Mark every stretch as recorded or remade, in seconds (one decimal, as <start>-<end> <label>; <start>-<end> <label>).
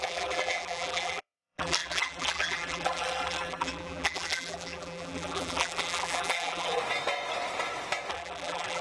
0.0-6.8 remade; 6.8-8.1 recorded; 8.1-8.8 remade